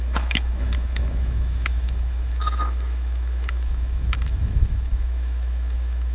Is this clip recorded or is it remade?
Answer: remade